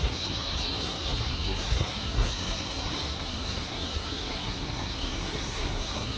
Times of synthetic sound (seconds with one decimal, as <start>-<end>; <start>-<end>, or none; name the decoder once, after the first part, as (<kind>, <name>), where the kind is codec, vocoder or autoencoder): 0.0-6.2 (codec, SNAC)